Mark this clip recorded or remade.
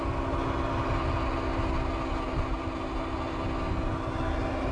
recorded